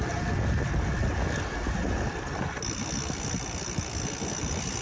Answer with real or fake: real